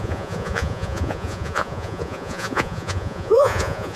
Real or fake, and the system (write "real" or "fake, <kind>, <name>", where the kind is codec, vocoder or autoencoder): fake, vocoder, Vocos